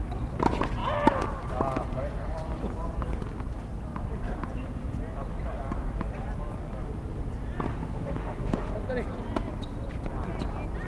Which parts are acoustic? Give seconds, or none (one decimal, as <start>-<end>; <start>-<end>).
0.0-7.7; 8.7-10.9